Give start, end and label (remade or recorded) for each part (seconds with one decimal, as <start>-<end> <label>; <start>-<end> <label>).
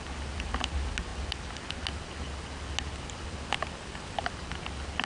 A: 0.0-5.1 recorded